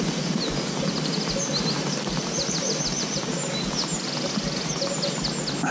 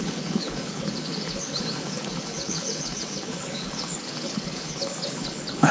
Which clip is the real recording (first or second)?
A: first